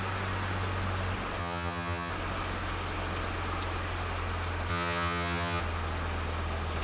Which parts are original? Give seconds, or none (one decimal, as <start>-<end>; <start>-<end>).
0.0-1.4; 2.1-4.7; 5.6-6.8

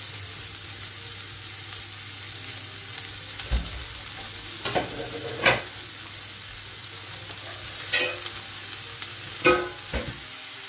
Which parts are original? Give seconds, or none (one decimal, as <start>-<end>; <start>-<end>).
0.0-10.7